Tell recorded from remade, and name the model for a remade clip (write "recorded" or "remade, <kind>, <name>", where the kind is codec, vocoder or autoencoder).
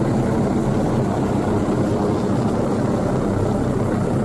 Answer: recorded